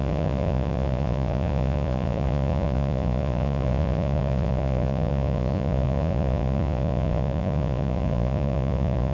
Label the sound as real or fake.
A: fake